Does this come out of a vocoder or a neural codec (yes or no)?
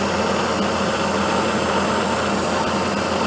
no